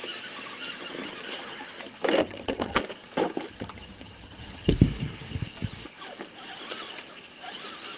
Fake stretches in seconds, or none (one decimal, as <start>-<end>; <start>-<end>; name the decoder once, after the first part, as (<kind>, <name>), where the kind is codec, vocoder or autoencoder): 2.2-2.8 (vocoder, HiFi-GAN); 3.5-4.7